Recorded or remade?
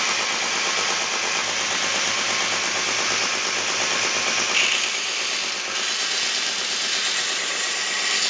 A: recorded